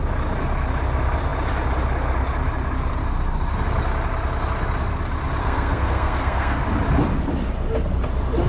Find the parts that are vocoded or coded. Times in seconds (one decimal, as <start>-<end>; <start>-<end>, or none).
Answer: 5.4-6.6

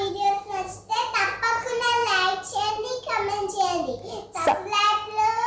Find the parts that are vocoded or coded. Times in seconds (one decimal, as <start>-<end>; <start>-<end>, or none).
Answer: none

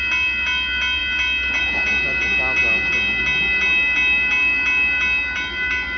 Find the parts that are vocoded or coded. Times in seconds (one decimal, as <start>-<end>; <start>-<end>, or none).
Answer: none

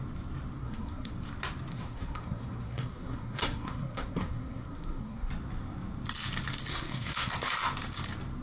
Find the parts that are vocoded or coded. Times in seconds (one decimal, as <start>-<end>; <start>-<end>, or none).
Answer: 0.6-1.1; 1.7-5.3; 6.7-7.3

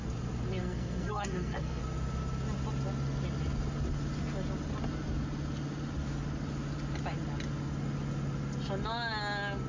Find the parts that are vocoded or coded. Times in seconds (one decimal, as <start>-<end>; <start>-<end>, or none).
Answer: 0.6-1.8